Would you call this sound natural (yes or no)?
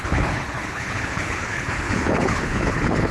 no